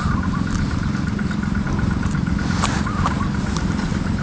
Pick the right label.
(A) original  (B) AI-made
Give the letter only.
A